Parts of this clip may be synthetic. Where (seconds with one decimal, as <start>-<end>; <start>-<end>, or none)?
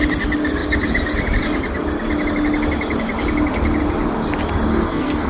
4.7-5.3